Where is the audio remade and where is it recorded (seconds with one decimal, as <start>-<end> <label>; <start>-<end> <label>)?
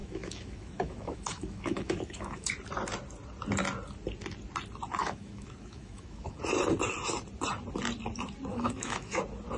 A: 0.0-2.5 remade; 2.5-5.0 recorded; 5.0-6.4 remade; 6.4-8.5 recorded; 8.5-9.2 remade; 9.2-9.6 recorded